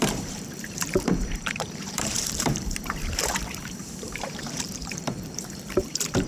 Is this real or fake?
fake